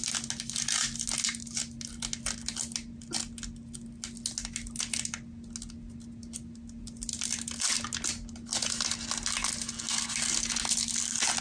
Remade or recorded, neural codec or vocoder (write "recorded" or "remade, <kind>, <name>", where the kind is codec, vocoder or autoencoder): recorded